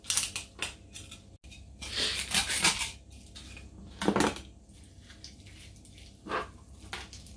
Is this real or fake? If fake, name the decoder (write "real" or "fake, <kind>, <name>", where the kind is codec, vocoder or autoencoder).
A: real